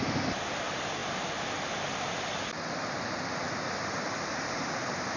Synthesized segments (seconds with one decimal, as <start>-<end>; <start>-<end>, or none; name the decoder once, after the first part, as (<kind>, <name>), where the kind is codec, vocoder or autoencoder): none